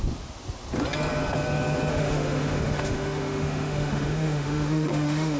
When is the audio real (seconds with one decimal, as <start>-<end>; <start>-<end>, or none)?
0.0-1.9